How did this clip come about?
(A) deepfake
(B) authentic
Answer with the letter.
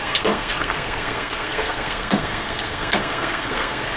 A